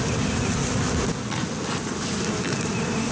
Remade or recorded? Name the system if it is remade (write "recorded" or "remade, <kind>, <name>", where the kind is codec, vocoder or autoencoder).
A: recorded